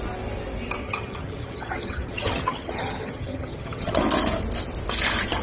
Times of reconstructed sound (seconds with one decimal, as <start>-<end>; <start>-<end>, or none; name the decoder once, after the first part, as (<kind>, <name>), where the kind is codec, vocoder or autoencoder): 0.8-4.0 (vocoder, HiFi-GAN)